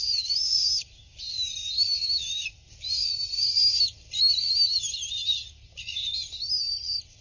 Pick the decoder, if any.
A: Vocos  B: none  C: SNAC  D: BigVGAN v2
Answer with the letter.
B